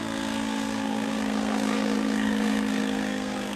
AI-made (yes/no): yes